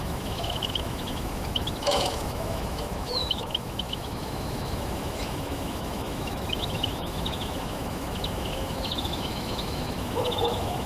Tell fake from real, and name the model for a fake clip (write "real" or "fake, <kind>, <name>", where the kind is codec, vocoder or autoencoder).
fake, autoencoder, DAC-VAE